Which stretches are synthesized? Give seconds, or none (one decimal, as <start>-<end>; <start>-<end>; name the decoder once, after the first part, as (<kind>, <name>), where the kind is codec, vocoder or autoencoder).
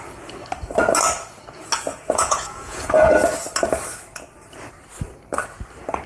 1.9-3.1 (vocoder, Vocos)